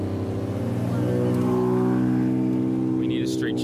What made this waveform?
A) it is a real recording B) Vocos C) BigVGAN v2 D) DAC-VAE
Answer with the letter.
A